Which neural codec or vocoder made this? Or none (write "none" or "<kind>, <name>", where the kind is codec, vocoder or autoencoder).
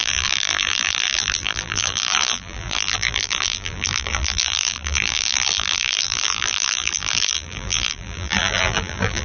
vocoder, BigVGAN v2